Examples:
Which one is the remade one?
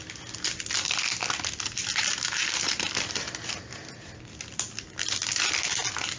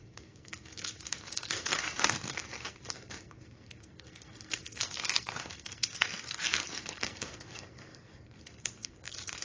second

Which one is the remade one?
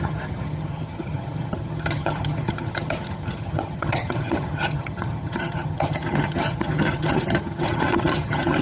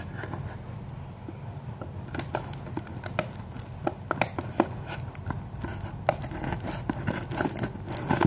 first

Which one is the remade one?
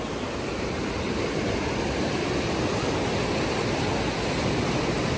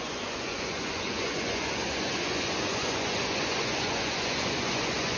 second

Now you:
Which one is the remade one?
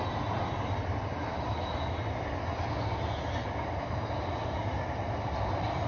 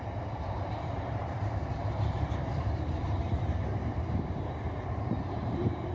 second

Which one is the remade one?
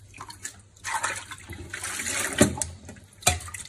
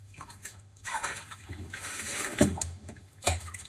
second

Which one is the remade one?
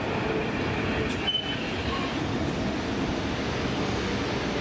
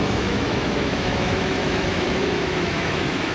second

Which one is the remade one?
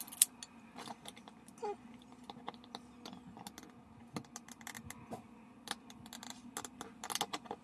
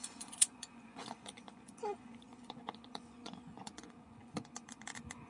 second